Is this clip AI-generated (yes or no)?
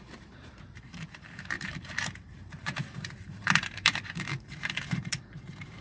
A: yes